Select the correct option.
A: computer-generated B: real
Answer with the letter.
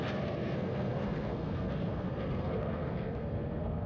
A